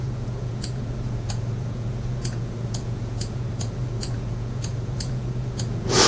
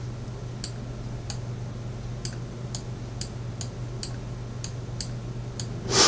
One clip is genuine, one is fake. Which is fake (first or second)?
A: first